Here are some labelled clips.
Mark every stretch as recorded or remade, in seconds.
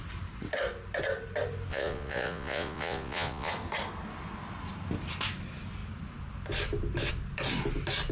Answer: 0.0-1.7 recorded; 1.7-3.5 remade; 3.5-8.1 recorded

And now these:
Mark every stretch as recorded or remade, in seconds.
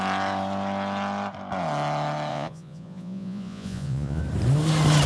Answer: 0.0-2.3 recorded; 2.3-4.2 remade; 4.2-5.1 recorded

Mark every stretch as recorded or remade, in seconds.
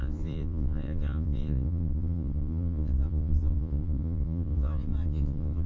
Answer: 0.0-5.7 remade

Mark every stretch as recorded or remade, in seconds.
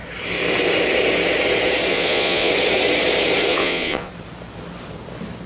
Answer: 0.0-1.9 recorded; 1.9-2.5 remade; 2.5-3.5 recorded; 3.5-4.1 remade; 4.1-5.5 recorded